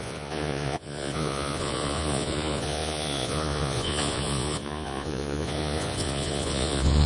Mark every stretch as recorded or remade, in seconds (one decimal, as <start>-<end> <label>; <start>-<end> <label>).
0.0-7.1 remade